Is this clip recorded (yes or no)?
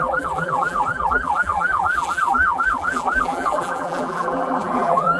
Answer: no